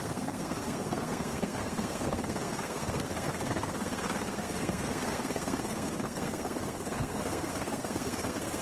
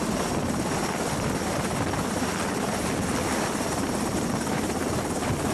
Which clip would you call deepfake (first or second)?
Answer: first